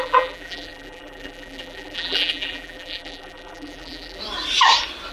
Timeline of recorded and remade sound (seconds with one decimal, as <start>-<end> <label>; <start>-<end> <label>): 0.0-4.2 remade; 4.2-5.1 recorded

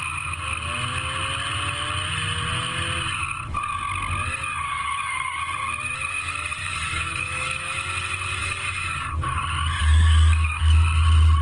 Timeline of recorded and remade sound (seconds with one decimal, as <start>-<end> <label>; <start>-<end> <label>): 0.0-4.5 recorded; 4.5-5.4 remade; 5.4-6.6 recorded; 6.6-7.7 remade; 7.7-8.4 recorded; 8.4-9.4 remade; 9.4-9.8 recorded; 9.8-10.6 remade; 10.6-11.4 recorded

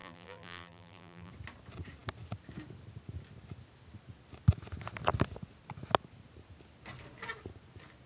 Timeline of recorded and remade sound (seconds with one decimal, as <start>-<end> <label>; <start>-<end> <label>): 0.0-1.3 remade; 1.3-8.1 recorded